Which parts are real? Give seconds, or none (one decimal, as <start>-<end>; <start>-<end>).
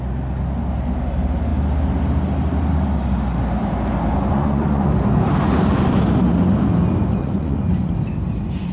0.0-4.1; 4.9-7.2; 7.9-8.7